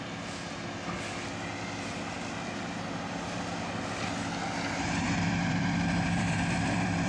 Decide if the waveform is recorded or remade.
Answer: remade